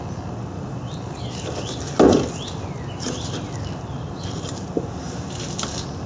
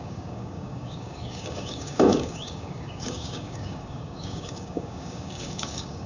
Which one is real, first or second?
first